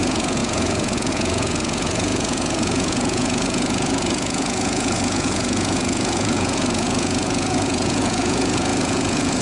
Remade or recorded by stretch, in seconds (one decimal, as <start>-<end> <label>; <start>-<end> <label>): 0.0-9.4 remade